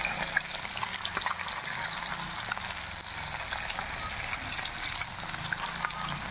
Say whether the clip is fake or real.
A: real